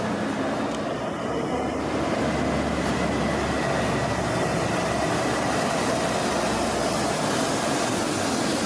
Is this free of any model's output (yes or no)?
yes